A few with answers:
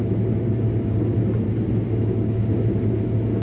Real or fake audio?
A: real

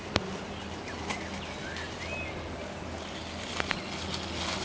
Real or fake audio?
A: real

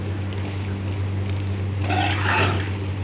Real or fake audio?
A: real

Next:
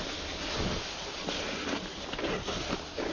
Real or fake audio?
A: real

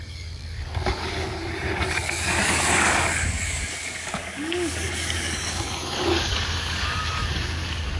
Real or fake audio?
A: fake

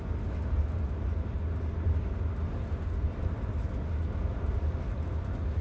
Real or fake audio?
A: real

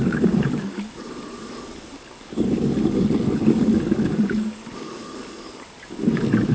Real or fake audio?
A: fake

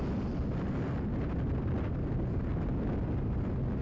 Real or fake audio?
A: real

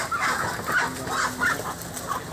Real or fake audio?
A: real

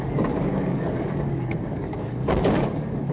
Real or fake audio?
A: fake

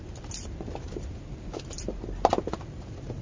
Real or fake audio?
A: real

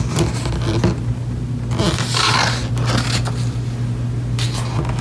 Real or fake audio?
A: real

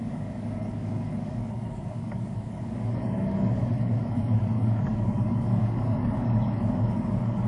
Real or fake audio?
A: fake